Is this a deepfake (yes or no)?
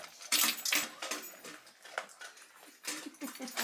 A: no